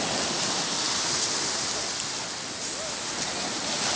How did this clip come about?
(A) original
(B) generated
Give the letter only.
A